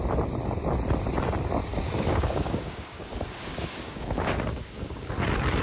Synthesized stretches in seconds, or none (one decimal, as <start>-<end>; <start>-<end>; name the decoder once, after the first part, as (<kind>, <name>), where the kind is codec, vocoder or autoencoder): 1.7-5.1 (codec, DAC)